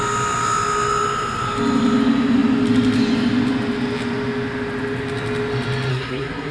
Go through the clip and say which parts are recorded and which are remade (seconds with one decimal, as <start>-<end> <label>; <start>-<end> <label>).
0.0-5.9 recorded; 5.9-6.5 remade